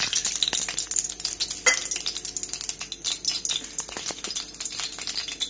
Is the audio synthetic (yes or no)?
no